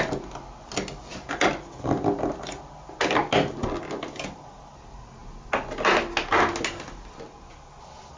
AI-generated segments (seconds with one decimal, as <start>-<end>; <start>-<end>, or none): none